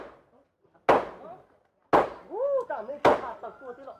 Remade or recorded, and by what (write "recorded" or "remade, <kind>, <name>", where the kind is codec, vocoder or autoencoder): recorded